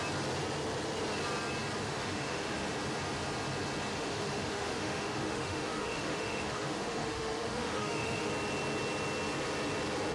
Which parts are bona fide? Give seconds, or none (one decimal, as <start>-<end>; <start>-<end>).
0.0-1.8; 2.7-3.9; 8.3-10.1